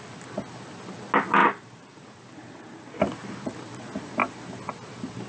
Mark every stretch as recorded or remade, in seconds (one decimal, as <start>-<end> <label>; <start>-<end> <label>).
0.0-1.4 recorded; 1.4-3.0 remade; 3.0-5.3 recorded